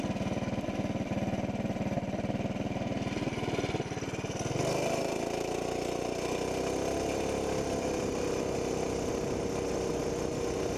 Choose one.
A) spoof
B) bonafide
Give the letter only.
B